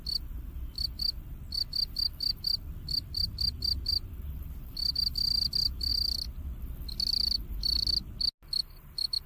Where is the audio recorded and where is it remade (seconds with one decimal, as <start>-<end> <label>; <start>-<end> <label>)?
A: 0.0-9.3 recorded